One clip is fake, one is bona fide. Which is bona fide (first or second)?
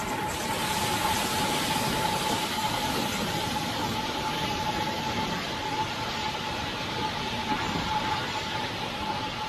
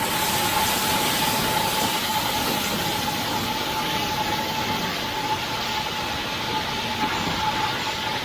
second